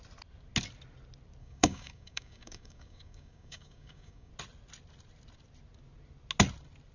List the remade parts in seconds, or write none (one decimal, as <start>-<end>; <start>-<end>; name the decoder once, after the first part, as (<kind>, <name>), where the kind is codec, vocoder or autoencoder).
1.4-4.3 (codec, DAC)